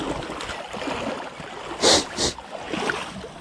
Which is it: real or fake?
real